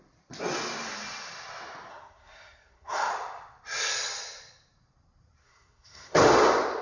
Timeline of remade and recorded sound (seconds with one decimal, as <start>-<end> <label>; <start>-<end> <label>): 0.0-1.9 recorded; 1.9-3.1 remade; 3.1-5.4 recorded; 5.4-6.2 remade; 6.2-6.8 recorded